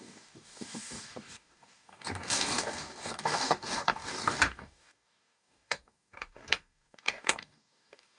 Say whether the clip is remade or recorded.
remade